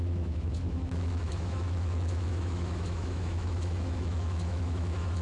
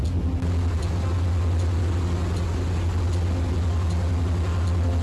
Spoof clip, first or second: first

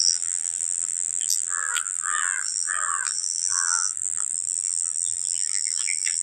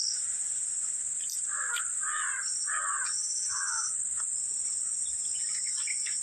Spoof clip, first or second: first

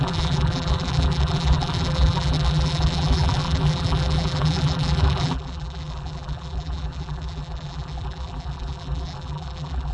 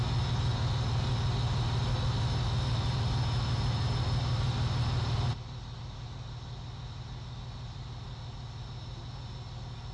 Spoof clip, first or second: first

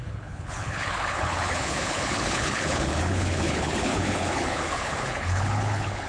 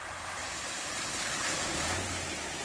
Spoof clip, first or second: first